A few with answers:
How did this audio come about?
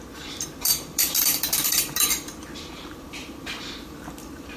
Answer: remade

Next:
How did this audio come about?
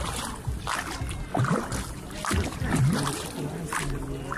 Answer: recorded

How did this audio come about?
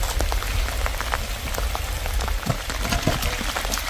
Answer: remade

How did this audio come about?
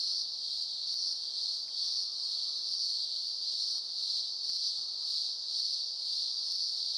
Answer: recorded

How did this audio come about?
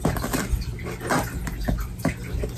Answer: recorded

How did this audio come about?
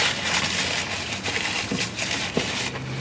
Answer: remade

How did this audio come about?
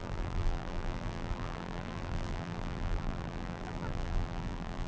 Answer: remade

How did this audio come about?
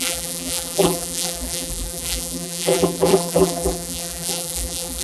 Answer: remade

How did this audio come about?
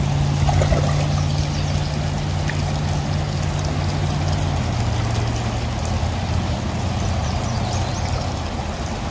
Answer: recorded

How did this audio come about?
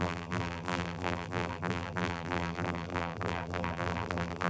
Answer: remade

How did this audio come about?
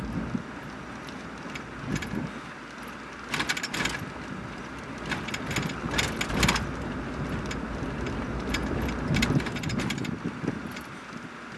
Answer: recorded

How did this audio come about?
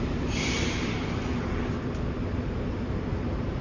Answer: remade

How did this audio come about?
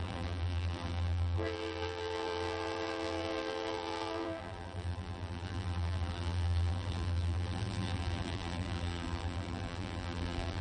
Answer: remade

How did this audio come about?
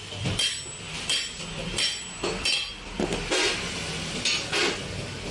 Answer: recorded